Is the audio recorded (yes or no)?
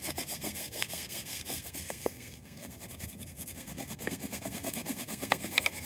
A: no